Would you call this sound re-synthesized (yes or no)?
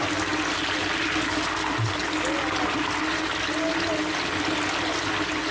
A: no